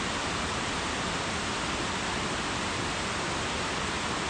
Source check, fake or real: real